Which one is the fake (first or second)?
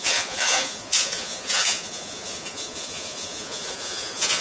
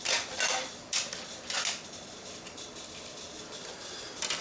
first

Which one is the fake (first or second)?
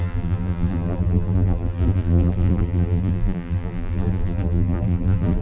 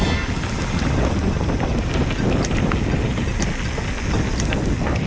first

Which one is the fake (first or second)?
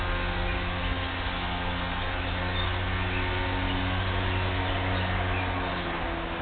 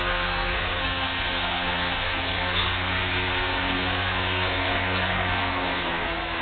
second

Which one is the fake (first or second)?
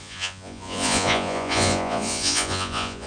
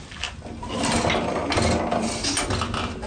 first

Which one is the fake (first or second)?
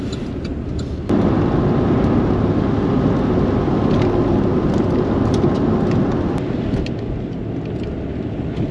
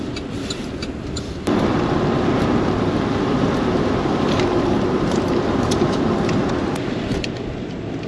second